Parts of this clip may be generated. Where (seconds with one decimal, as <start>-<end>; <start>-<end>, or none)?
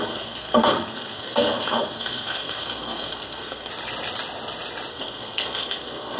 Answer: 0.0-3.7; 4.9-6.2